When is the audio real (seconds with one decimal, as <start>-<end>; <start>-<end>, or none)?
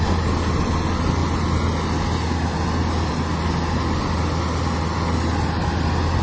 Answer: 0.0-6.2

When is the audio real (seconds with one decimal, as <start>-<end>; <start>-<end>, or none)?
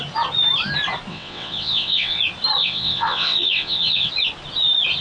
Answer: 0.0-1.1; 2.2-2.6; 4.1-5.0